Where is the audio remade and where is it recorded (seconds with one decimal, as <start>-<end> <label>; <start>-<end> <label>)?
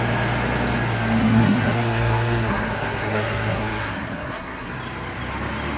0.0-1.2 recorded; 1.2-4.7 remade; 4.7-5.8 recorded